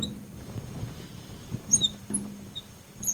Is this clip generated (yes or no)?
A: yes